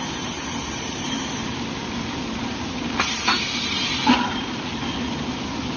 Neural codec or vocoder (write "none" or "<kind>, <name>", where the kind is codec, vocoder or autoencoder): none